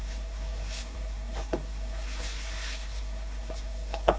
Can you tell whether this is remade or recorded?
remade